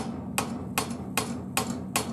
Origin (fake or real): real